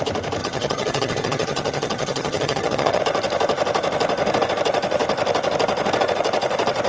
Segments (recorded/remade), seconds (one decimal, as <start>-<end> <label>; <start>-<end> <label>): 0.0-0.4 recorded; 0.4-3.0 remade; 3.0-6.9 recorded